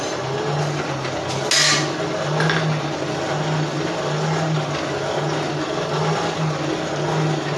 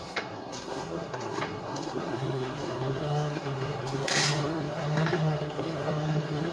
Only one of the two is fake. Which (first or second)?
second